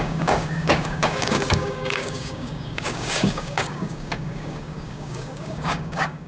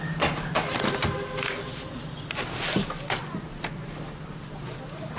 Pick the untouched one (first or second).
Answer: second